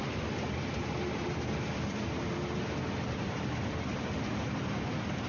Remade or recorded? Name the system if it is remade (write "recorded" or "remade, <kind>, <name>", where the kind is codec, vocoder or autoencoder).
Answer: recorded